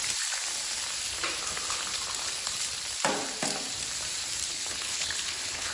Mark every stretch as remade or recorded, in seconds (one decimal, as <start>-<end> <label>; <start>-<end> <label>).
0.0-4.5 recorded; 4.5-5.7 remade